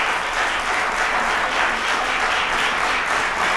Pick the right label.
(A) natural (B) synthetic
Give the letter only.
A